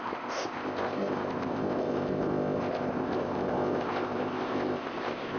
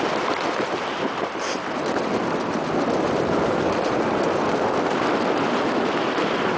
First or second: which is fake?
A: first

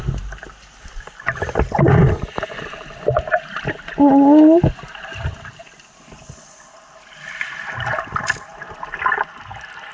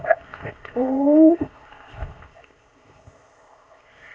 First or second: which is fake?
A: second